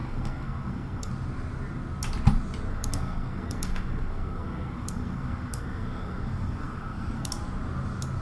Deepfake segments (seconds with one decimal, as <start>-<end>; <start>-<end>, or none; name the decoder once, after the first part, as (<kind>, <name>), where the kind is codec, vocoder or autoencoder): 0.0-1.1 (codec, SNAC); 2.7-7.3